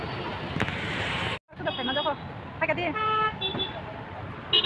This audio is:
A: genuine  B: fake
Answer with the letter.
A